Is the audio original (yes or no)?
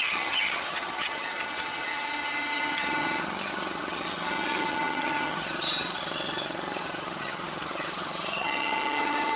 no